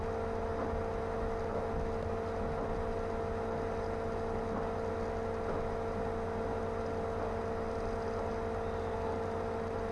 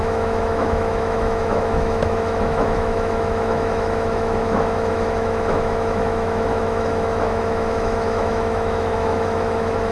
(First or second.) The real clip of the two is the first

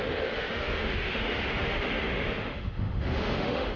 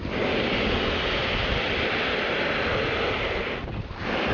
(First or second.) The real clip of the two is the second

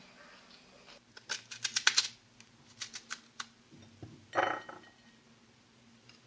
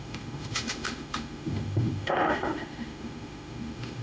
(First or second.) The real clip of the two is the first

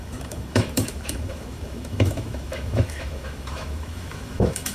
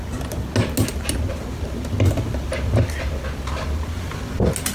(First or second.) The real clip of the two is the second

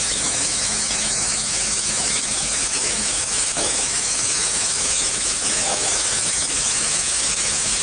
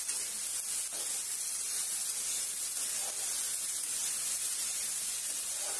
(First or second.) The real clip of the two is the second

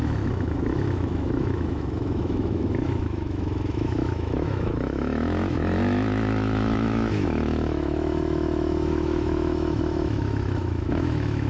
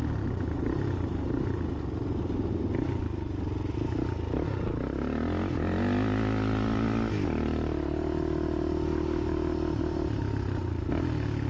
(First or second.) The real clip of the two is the second